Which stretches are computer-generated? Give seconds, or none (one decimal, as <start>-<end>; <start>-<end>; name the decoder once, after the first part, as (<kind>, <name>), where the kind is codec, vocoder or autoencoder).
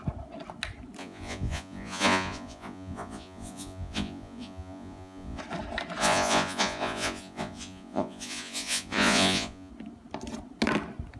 1.0-5.4 (vocoder, Vocos); 6.0-9.7